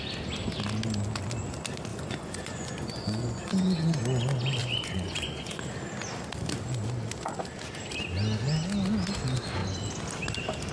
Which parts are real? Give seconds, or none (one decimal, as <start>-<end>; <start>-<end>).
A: 0.0-1.9; 4.0-4.6; 5.6-10.7